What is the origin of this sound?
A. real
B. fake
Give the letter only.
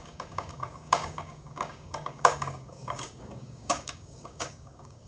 B